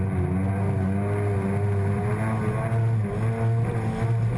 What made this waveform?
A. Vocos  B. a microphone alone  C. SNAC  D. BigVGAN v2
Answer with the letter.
B